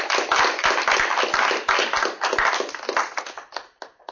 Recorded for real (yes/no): yes